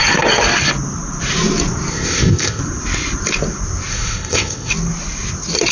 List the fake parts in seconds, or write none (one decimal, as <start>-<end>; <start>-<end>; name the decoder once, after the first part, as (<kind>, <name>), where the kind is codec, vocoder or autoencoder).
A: 1.9-2.6 (codec, ZipCodec); 3.9-4.7